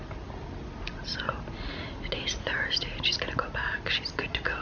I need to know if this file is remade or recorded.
recorded